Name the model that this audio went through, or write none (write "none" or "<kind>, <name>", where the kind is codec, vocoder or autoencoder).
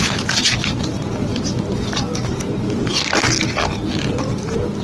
none